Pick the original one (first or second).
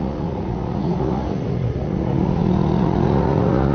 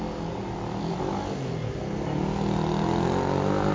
second